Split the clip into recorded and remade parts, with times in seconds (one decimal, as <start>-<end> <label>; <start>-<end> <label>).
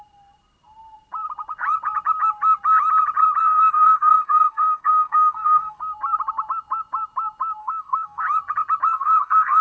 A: 0.0-3.4 recorded; 3.4-5.8 remade; 5.8-7.6 recorded; 7.6-8.2 remade; 8.2-8.9 recorded; 8.9-9.6 remade